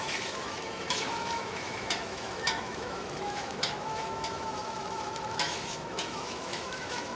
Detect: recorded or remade remade